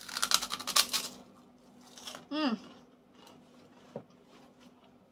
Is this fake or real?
real